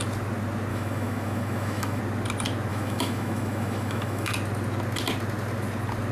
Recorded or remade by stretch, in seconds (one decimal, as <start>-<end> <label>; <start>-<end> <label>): 0.0-0.7 recorded; 0.7-2.0 remade; 2.0-2.7 recorded; 2.7-4.3 remade; 4.3-6.1 recorded

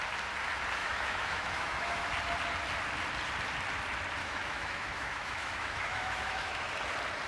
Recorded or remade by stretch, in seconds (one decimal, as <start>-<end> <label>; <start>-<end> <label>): 0.0-0.8 recorded; 0.8-2.1 remade; 2.1-4.2 recorded; 4.2-6.7 remade; 6.7-7.3 recorded

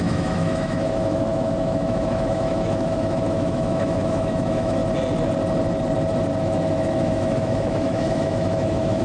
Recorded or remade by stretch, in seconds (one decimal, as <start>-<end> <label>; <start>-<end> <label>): 0.0-4.8 remade; 4.8-6.4 recorded; 6.4-9.0 remade

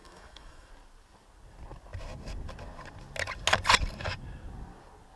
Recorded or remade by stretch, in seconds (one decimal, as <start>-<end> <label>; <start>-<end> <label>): 0.0-0.7 remade; 0.7-5.2 recorded

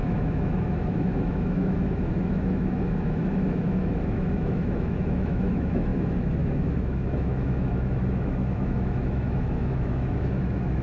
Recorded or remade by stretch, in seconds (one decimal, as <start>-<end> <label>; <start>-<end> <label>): 0.0-10.8 remade

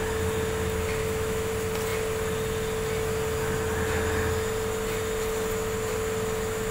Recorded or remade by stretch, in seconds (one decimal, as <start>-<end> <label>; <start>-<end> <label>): 0.0-1.0 recorded; 1.0-1.5 remade; 1.5-6.7 recorded